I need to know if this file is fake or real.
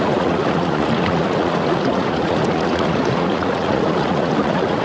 fake